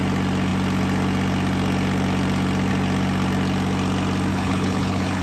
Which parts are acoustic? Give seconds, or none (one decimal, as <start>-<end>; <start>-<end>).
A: 0.0-4.3